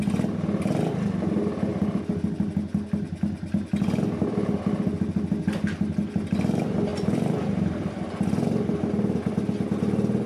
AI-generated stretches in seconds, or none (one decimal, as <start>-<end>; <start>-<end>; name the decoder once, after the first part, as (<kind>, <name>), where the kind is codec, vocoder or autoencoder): 6.9-8.0 (vocoder, BigVGAN v2)